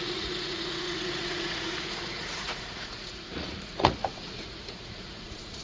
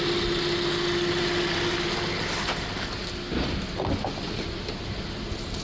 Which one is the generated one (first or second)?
first